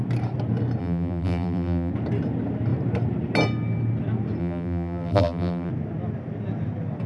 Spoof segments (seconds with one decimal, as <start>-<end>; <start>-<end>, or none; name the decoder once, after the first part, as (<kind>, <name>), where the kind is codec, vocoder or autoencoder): 0.8-1.9 (vocoder, BigVGAN v2); 4.4-5.7